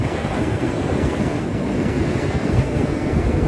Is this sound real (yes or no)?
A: no